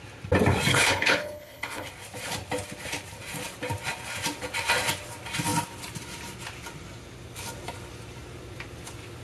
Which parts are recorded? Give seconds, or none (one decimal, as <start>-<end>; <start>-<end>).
0.0-0.7; 1.9-9.2